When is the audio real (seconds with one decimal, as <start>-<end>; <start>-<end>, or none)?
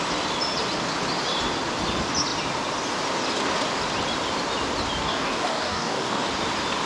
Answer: 0.0-5.0; 6.3-6.9